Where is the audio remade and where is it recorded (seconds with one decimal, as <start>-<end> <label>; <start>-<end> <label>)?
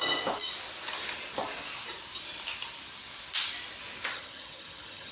0.0-4.1 recorded; 4.1-5.1 remade